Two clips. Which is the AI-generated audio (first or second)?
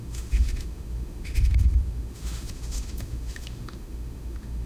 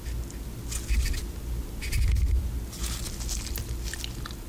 first